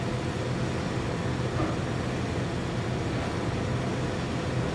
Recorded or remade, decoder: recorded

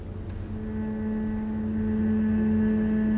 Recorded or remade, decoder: recorded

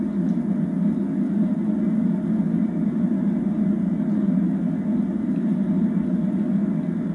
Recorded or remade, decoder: recorded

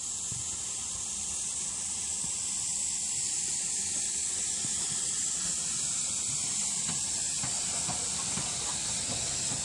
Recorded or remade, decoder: recorded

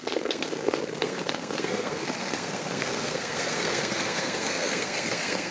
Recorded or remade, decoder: remade, codec, SNAC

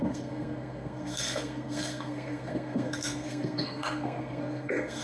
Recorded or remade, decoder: remade, codec, SNAC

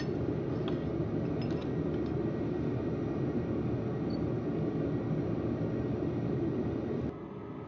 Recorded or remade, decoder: recorded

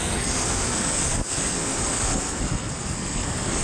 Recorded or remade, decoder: remade, codec, SNAC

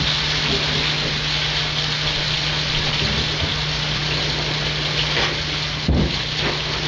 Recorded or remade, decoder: recorded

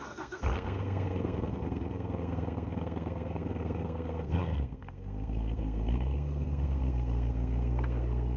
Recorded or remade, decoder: remade, codec, SNAC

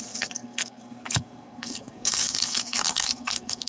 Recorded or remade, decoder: remade, codec, SNAC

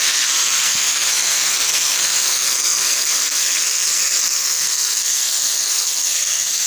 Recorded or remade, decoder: remade, codec, SNAC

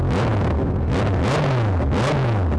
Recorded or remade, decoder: recorded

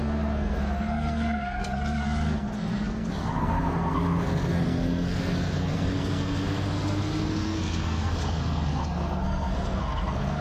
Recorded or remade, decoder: remade, codec, SNAC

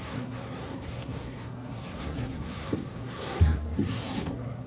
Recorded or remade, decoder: remade, codec, SNAC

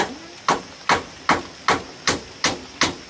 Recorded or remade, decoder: recorded